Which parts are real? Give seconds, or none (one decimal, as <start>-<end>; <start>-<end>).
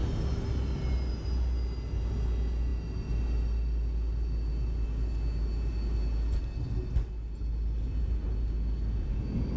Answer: 0.0-9.6